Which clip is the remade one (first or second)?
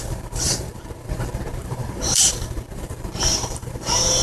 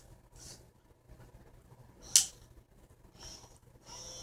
first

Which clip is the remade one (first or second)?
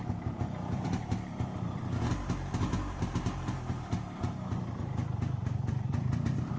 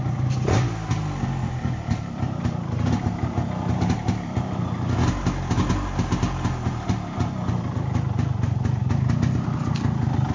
first